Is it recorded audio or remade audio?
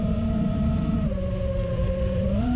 remade